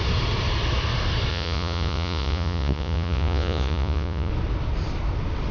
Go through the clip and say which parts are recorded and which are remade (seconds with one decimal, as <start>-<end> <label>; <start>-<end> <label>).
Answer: 0.0-1.3 recorded; 1.3-4.3 remade; 4.3-5.5 recorded